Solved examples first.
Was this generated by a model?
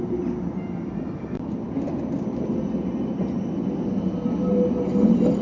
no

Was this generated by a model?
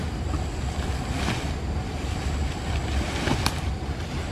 no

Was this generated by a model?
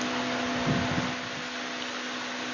no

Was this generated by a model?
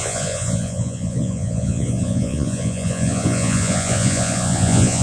yes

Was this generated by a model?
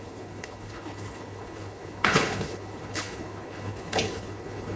yes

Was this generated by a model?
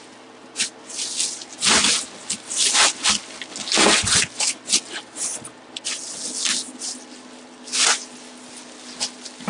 no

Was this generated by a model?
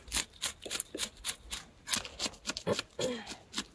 no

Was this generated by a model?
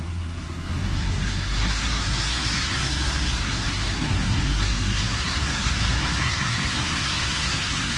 yes